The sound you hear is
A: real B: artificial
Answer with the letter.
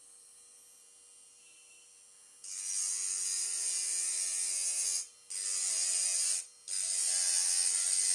A